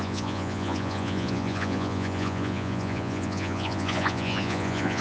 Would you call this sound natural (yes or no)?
no